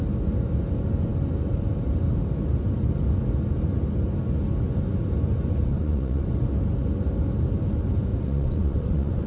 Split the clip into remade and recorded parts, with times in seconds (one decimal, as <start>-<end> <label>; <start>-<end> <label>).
0.0-5.7 recorded; 5.7-6.3 remade; 6.3-8.1 recorded; 8.1-9.3 remade

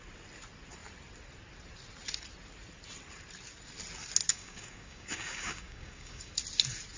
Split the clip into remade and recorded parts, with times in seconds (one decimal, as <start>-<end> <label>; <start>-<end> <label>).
0.0-4.3 recorded; 4.3-6.3 remade; 6.3-7.0 recorded

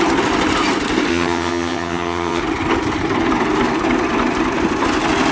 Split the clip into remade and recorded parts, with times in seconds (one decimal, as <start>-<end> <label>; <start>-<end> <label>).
0.0-1.1 recorded; 1.1-2.4 remade; 2.4-5.3 recorded

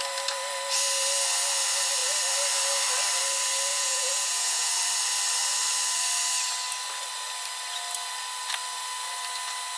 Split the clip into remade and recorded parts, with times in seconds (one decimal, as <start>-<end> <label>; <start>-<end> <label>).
0.0-3.7 recorded; 3.7-4.7 remade; 4.7-9.8 recorded